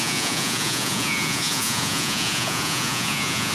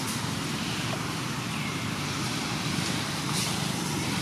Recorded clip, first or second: second